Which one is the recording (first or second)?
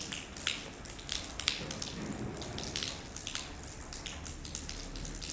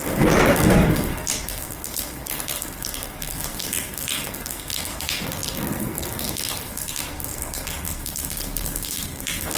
first